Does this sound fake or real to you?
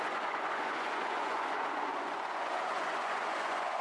fake